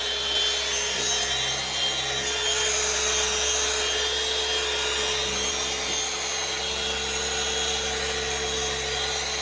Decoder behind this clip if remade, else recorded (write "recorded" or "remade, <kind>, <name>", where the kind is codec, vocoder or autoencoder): recorded